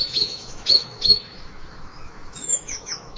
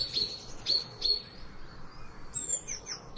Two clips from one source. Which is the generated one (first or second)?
first